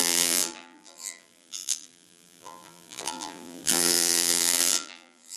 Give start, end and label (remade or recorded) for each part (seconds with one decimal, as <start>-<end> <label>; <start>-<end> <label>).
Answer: 0.0-5.4 remade